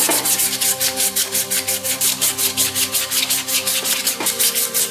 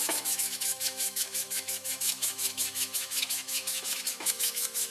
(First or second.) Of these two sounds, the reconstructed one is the second